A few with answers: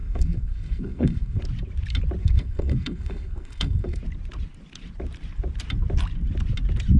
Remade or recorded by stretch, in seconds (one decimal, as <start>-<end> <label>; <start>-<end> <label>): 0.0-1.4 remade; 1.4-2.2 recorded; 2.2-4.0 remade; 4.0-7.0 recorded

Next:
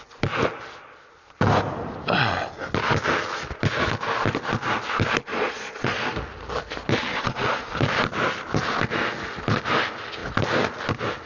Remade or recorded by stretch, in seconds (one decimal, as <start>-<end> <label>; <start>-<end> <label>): 0.0-5.3 recorded; 5.3-6.1 remade; 6.1-7.1 recorded; 7.1-7.7 remade; 7.7-11.3 recorded

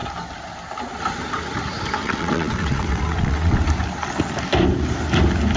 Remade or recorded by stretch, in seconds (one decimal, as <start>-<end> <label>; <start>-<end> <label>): 0.0-2.0 recorded; 2.0-3.6 remade; 3.6-5.6 recorded

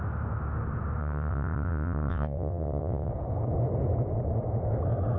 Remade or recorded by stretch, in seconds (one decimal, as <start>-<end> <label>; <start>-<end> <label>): 0.0-1.0 recorded; 1.0-3.1 remade; 3.1-5.2 recorded